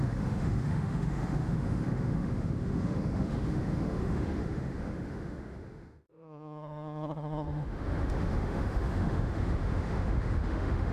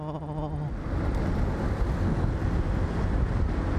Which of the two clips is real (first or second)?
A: second